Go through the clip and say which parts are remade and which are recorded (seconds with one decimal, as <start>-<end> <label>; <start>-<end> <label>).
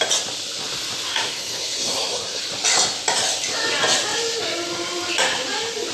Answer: 0.0-1.1 recorded; 1.1-2.4 remade; 2.4-5.9 recorded